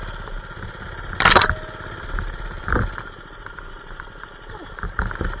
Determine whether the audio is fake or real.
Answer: real